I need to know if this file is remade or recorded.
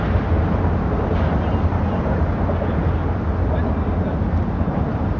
recorded